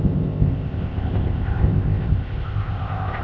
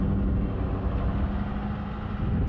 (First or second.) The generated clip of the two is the first